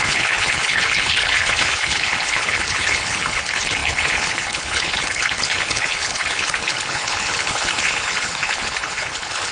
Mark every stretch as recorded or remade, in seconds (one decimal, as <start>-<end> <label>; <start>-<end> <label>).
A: 0.0-9.5 remade